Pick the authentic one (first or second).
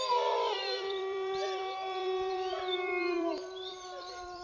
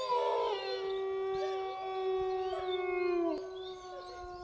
second